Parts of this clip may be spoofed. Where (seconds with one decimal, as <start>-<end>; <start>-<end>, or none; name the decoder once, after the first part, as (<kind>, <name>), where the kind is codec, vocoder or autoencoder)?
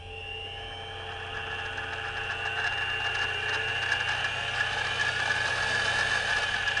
none